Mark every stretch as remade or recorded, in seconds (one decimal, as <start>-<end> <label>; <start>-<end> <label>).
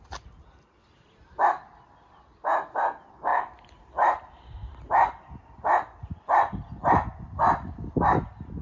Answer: 0.0-8.6 recorded